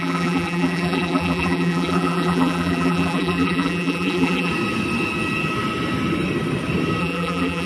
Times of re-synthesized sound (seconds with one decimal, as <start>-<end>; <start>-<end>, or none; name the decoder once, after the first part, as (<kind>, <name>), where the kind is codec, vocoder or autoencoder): 0.0-4.5 (vocoder, BigVGAN v2); 7.0-7.7